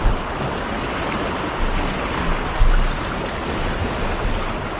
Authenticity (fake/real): real